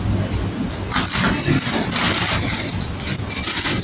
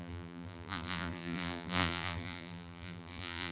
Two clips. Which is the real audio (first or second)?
first